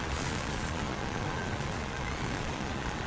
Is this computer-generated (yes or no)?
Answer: yes